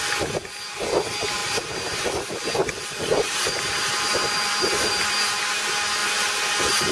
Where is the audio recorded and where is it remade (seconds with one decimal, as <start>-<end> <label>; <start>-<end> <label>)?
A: 0.0-1.4 recorded; 1.4-4.9 remade; 4.9-6.9 recorded